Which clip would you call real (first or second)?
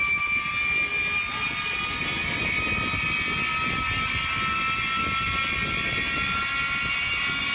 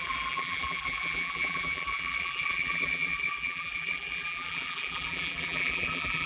first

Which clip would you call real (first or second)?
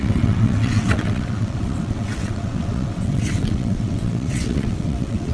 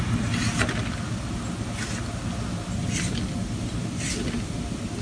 second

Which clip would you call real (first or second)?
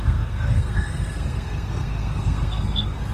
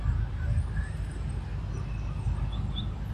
second